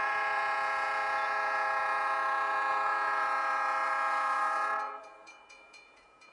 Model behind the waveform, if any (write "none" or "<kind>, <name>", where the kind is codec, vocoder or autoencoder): vocoder, Vocos